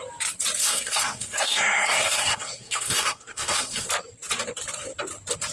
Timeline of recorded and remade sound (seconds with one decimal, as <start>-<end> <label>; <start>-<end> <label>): 0.0-0.6 recorded; 0.6-3.9 remade; 3.9-5.5 recorded